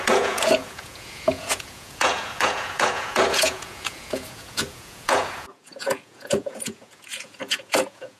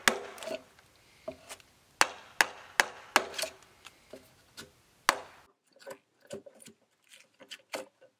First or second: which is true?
second